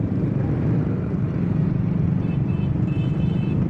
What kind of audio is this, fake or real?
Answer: fake